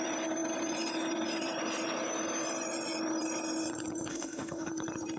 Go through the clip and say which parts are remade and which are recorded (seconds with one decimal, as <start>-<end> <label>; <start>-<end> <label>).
0.0-4.1 recorded; 4.1-4.7 remade; 4.7-5.2 recorded